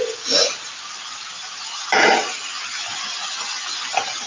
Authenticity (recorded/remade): recorded